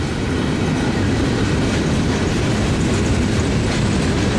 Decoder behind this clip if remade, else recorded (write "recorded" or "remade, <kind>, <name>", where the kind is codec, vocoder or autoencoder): remade, vocoder, BigVGAN v2